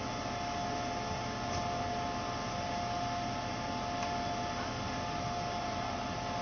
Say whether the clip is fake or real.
real